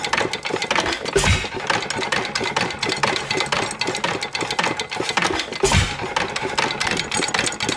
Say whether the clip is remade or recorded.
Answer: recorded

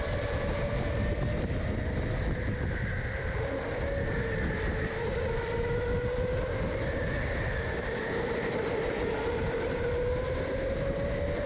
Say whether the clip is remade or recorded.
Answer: recorded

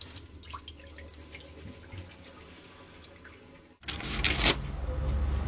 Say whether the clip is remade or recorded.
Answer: recorded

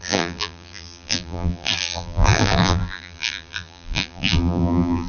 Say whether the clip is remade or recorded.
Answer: remade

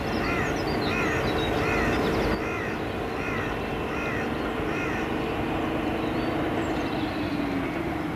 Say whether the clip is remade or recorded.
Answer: recorded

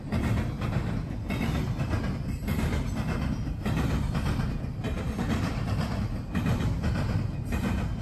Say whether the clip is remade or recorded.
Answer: recorded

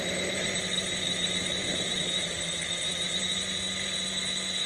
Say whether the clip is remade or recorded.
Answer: remade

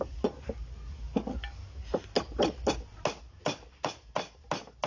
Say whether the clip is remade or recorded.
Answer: recorded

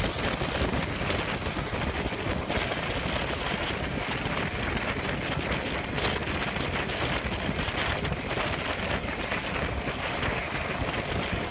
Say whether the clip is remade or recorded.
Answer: recorded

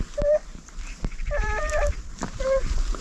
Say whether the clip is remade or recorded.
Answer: remade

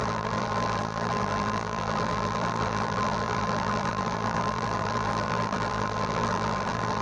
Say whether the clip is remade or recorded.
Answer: remade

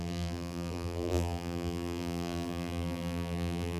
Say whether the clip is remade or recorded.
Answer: remade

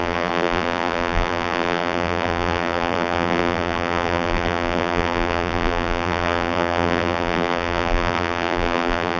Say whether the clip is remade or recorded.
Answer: remade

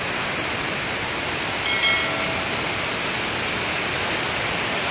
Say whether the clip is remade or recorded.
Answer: recorded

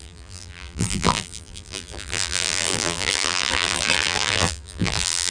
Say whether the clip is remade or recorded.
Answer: remade